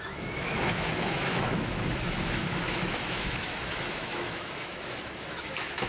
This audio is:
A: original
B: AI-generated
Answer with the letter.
B